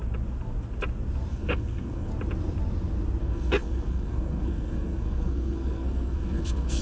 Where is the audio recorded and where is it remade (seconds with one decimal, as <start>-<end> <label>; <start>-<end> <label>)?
0.0-1.3 recorded; 1.3-2.1 remade; 2.1-3.2 recorded; 3.2-6.8 remade